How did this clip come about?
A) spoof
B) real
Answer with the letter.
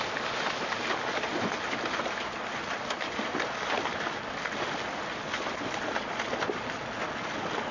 B